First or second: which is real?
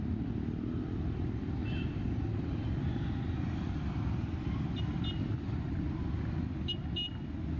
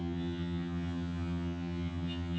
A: first